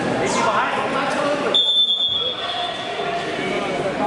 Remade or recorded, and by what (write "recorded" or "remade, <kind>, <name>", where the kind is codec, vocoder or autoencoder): recorded